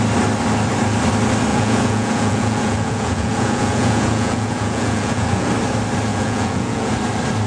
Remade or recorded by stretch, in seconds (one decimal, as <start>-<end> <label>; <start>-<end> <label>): 0.0-1.5 recorded; 1.5-5.5 remade; 5.5-6.1 recorded; 6.1-6.9 remade; 6.9-7.5 recorded